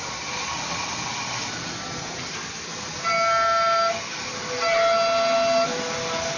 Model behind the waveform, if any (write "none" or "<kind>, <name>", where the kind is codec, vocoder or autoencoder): none